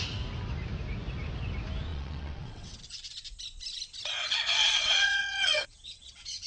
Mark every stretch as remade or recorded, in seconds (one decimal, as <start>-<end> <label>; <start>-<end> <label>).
0.0-1.9 recorded; 1.9-2.8 remade; 2.8-4.6 recorded; 4.6-6.5 remade